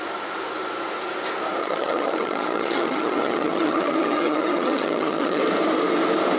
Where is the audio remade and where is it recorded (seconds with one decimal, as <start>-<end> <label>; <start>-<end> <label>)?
0.0-1.6 recorded; 1.6-5.4 remade; 5.4-6.4 recorded

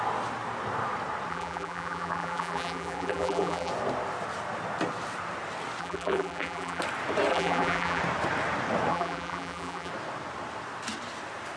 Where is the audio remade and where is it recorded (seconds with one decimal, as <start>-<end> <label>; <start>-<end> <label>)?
0.0-1.3 recorded; 1.3-3.7 remade; 3.7-5.8 recorded; 5.8-6.8 remade; 6.8-7.3 recorded; 7.3-8.0 remade; 8.0-8.9 recorded; 8.9-9.9 remade; 9.9-11.6 recorded

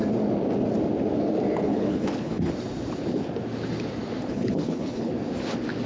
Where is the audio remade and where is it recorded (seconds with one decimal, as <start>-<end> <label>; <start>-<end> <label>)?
0.0-1.7 recorded; 1.7-2.5 remade; 2.5-4.3 recorded; 4.3-5.1 remade; 5.1-5.9 recorded